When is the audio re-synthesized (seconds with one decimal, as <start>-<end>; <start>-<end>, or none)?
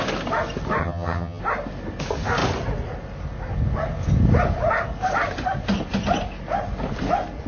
0.8-1.4